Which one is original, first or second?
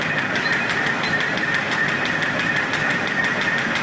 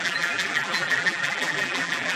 first